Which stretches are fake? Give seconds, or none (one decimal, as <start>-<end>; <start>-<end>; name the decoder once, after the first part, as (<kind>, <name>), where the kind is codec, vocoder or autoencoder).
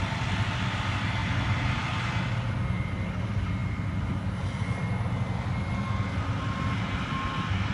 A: none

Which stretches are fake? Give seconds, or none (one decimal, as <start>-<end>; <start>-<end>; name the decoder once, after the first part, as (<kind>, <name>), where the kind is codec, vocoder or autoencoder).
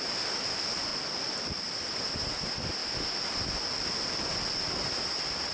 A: 0.9-1.8 (vocoder, BigVGAN v2); 2.8-4.9